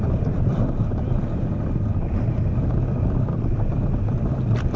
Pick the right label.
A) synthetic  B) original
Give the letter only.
B